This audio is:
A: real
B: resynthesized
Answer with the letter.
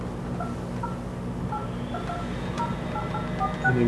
A